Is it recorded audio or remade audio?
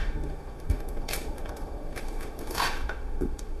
remade